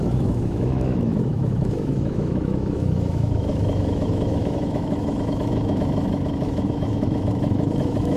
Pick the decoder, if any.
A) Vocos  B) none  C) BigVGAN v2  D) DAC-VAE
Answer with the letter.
D